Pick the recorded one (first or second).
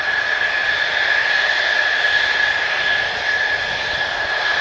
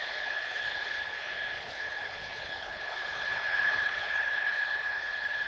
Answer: first